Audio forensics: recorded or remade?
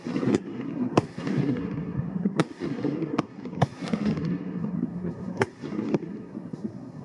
remade